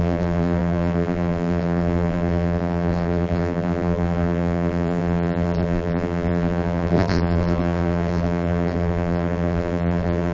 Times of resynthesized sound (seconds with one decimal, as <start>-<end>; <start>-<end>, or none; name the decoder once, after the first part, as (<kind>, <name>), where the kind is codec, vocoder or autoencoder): 0.0-10.3 (vocoder, BigVGAN v2)

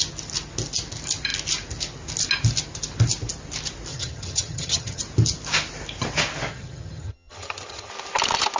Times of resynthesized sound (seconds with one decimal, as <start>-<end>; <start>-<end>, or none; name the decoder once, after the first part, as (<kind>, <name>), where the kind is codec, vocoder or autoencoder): 3.9-5.0 (vocoder, HiFi-GAN); 6.5-7.9

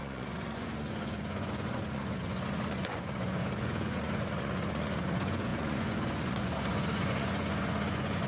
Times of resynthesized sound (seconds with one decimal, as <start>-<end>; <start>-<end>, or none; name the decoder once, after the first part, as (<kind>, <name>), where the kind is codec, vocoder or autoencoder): 0.0-8.3 (vocoder, Vocos)

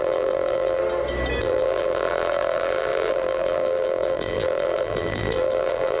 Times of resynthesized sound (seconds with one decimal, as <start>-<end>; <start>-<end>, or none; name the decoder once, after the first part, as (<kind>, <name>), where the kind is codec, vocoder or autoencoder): 0.0-0.8 (vocoder, BigVGAN v2); 1.4-6.0

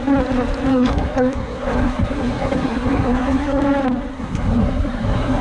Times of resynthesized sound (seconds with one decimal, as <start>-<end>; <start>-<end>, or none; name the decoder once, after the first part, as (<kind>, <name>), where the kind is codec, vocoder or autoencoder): 0.7-3.6 (codec, SNAC); 4.1-5.4

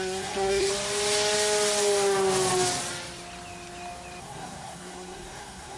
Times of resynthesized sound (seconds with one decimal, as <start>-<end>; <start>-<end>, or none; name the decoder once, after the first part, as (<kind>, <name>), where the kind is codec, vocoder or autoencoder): 0.0-0.7 (codec, SNAC); 4.2-5.8

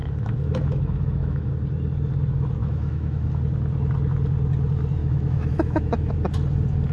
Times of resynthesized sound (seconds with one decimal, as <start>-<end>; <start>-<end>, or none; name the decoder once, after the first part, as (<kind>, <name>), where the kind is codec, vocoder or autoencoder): 0.0-1.5 (autoencoder, DAC-VAE); 2.6-3.3; 5.0-6.1